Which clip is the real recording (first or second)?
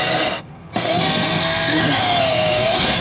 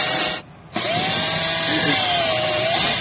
second